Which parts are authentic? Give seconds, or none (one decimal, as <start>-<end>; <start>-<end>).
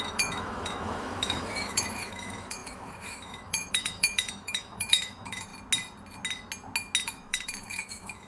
5.5-7.0